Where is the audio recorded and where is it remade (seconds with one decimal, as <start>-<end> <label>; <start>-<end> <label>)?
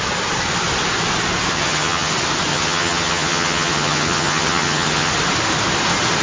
0.0-1.5 recorded; 1.5-2.1 remade; 2.1-2.5 recorded; 2.5-5.1 remade; 5.1-6.2 recorded